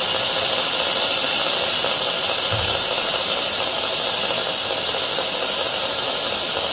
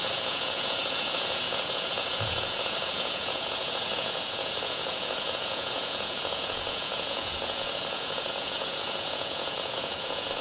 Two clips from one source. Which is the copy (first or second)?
second